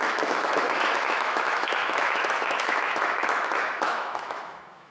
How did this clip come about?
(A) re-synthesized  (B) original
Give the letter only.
A